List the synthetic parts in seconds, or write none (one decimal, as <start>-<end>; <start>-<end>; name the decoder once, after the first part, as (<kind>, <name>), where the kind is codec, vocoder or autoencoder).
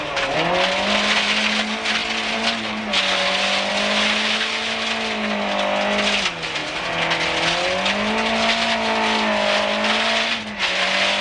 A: none